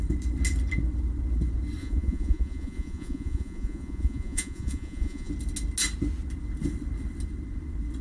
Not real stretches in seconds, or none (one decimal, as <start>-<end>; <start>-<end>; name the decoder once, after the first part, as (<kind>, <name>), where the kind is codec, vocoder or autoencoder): 1.8-5.3 (vocoder, Vocos)